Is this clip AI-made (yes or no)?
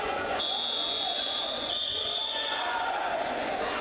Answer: yes